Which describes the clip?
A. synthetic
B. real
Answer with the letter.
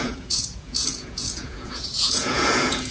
A